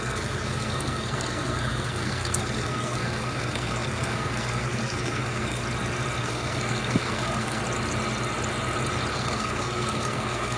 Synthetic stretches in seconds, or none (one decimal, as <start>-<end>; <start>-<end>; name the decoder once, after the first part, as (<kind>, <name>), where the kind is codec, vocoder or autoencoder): 0.0-5.6 (codec, SNAC); 6.2-7.6; 9.1-10.6